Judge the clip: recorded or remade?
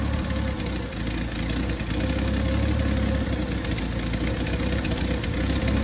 recorded